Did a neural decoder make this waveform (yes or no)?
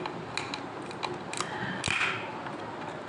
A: no